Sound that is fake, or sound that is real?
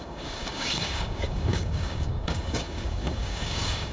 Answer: fake